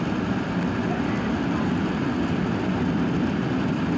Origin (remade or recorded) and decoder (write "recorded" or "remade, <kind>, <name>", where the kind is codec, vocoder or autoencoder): recorded